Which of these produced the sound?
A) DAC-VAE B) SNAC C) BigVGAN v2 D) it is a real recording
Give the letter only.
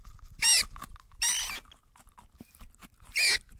D